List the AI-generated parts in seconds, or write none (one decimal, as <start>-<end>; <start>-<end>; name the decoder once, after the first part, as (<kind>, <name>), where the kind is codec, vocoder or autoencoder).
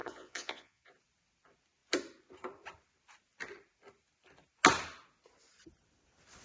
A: 0.0-0.9 (vocoder, Vocos)